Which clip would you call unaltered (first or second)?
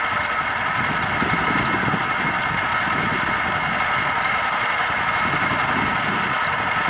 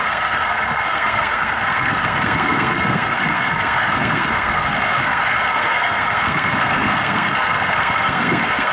first